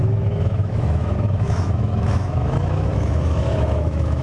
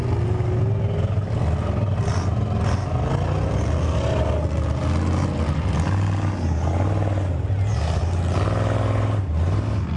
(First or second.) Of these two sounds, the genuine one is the second